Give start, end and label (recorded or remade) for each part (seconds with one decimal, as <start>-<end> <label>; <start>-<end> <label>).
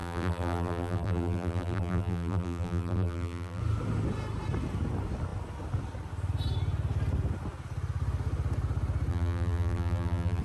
0.0-3.6 remade; 3.6-9.1 recorded; 9.1-10.4 remade